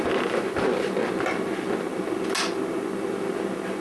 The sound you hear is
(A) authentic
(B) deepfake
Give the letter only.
A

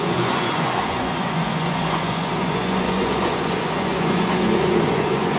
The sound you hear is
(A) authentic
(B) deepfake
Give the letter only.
B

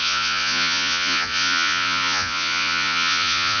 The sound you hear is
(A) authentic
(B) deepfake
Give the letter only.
B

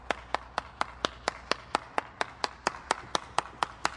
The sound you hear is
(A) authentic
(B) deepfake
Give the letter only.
A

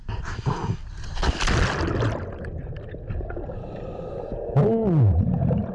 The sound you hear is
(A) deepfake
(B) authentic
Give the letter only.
B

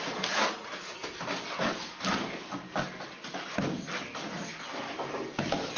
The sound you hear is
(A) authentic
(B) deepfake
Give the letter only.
A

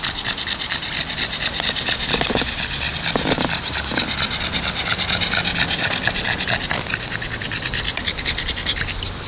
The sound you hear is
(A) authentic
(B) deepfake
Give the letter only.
A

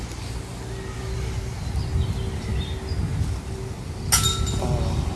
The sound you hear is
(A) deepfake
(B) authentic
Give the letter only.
B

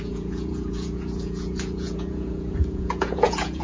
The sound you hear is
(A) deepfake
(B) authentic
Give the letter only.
A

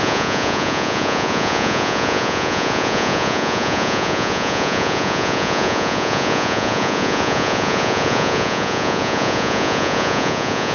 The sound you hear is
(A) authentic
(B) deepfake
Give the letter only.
B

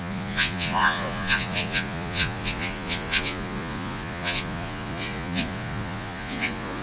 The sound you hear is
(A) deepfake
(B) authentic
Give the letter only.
A